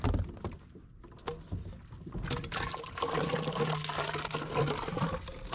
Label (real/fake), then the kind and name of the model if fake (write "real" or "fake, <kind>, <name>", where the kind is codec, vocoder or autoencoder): real